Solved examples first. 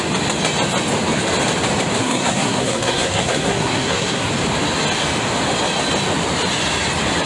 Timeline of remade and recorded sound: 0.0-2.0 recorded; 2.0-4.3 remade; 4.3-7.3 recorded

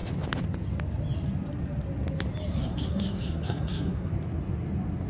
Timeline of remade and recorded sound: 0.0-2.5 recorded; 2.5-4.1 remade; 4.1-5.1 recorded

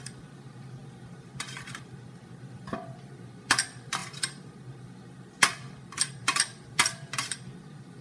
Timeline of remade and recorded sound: 0.0-8.0 remade

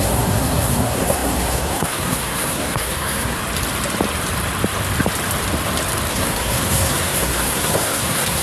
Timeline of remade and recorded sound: 0.0-3.4 remade; 3.4-6.1 recorded; 6.1-8.4 remade

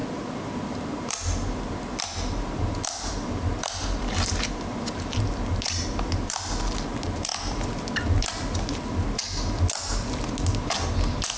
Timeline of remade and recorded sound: 0.0-11.4 recorded